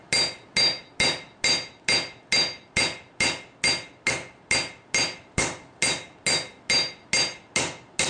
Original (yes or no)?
yes